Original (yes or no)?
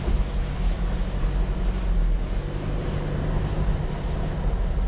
yes